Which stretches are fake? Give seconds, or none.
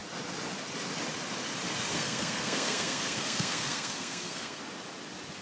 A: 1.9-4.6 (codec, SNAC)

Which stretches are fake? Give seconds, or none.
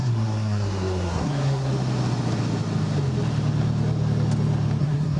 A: 0.0-1.7 (codec, SNAC); 4.8-5.2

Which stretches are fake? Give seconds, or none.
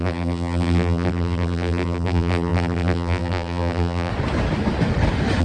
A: 0.0-4.1 (vocoder, BigVGAN v2)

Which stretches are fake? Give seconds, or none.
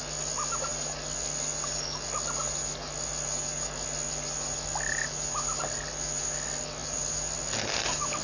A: none